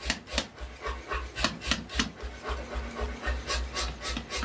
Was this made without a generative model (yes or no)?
yes